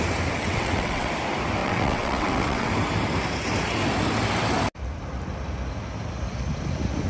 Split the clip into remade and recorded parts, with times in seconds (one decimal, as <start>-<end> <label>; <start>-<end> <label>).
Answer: 0.0-0.4 recorded; 0.4-1.1 remade; 1.1-1.6 recorded; 1.6-2.7 remade; 2.7-7.1 recorded